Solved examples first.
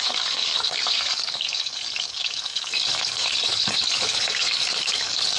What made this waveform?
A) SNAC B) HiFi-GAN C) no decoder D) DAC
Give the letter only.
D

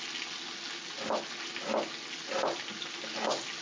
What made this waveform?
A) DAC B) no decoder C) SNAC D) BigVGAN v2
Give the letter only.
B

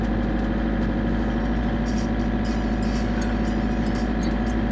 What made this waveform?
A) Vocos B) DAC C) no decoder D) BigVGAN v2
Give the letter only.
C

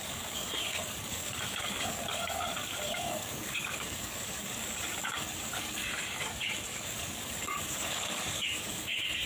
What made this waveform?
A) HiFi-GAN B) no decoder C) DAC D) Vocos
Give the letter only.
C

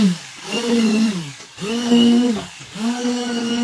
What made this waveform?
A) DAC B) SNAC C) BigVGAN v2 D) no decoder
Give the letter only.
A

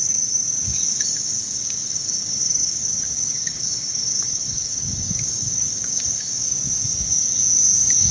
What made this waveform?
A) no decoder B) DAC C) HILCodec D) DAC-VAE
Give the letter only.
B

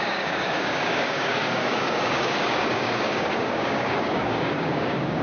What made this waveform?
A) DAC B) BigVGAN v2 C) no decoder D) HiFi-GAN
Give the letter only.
A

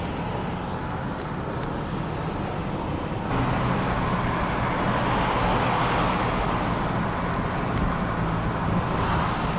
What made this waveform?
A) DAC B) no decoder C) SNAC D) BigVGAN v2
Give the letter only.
B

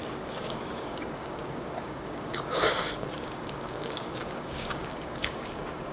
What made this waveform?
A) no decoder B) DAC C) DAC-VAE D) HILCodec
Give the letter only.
B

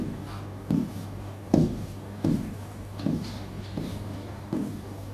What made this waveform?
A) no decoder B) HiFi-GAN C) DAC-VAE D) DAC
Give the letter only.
D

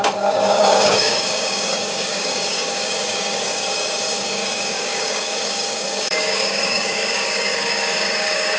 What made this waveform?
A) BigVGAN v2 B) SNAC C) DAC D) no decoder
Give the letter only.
C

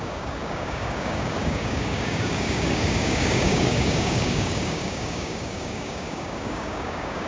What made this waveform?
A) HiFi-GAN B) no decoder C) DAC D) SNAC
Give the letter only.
C